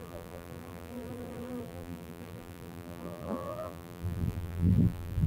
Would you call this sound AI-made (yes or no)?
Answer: yes